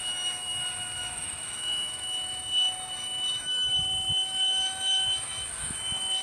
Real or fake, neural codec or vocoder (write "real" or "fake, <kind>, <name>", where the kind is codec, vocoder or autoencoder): fake, autoencoder, DAC-VAE